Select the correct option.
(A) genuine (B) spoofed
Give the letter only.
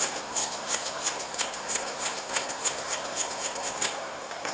B